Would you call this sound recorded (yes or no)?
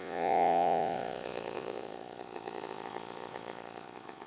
no